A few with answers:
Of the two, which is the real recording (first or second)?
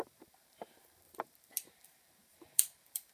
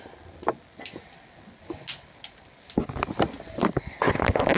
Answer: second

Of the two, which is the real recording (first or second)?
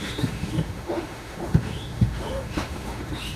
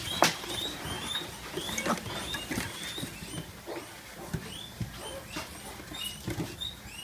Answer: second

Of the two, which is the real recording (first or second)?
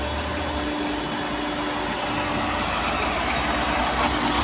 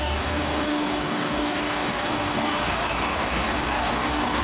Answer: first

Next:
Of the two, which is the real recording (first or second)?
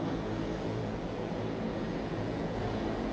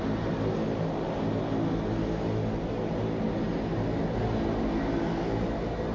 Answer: second